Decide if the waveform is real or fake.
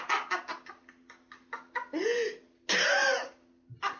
real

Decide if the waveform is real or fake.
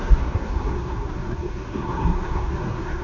fake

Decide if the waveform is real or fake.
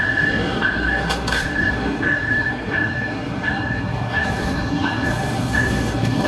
fake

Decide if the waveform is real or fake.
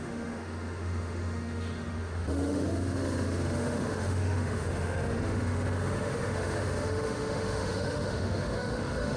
fake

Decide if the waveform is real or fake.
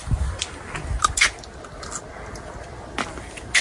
real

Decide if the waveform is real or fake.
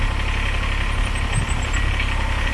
real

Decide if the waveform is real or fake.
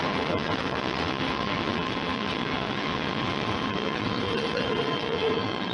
fake